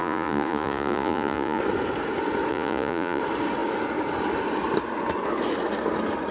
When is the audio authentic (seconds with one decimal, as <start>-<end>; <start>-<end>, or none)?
1.6-2.5; 3.2-6.3